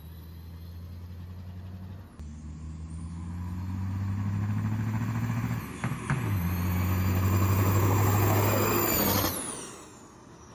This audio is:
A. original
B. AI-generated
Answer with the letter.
A